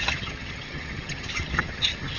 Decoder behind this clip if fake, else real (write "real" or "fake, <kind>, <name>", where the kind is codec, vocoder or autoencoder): fake, vocoder, HiFi-GAN